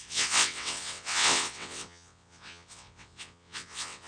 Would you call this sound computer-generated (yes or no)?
yes